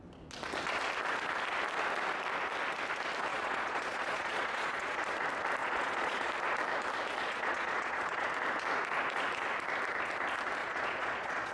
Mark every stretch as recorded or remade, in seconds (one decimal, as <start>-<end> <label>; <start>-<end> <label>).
0.0-3.3 recorded; 3.3-5.0 remade; 5.0-5.6 recorded; 5.6-6.3 remade; 6.3-7.2 recorded; 7.2-8.3 remade; 8.3-10.6 recorded; 10.6-11.5 remade

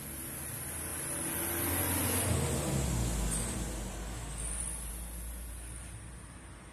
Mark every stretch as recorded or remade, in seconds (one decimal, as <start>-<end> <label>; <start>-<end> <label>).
0.0-6.7 recorded

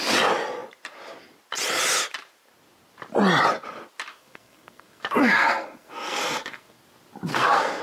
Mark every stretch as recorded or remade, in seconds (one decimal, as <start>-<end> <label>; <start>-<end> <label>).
0.0-4.1 recorded; 4.1-6.8 remade; 6.8-7.3 recorded; 7.3-7.8 remade

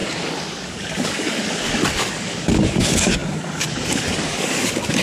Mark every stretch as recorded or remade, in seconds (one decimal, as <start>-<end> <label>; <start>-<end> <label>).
0.0-5.0 remade